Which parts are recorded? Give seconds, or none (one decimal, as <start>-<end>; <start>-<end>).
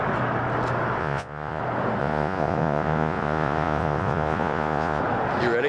0.0-1.0; 1.6-2.0; 5.0-5.7